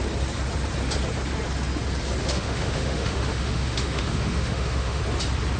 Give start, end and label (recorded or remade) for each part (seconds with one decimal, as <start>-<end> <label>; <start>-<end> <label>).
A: 0.0-2.2 recorded; 2.2-5.0 remade; 5.0-5.6 recorded